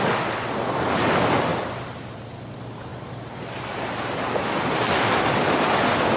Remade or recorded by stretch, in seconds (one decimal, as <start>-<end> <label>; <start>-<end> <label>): 0.0-1.5 recorded; 1.5-2.2 remade; 2.2-2.9 recorded; 2.9-4.5 remade; 4.5-6.2 recorded